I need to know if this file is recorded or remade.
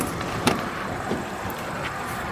remade